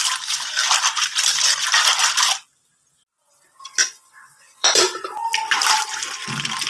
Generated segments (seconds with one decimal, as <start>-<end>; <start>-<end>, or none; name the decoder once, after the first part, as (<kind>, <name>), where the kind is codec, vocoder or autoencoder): 3.8-4.7 (vocoder, Vocos)